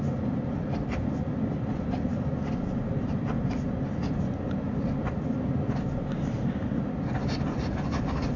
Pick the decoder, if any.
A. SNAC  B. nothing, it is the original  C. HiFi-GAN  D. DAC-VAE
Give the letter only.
B